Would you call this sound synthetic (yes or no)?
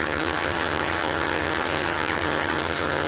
yes